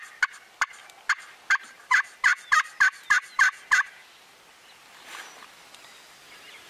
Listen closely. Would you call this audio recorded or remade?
recorded